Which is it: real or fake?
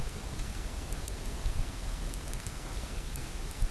fake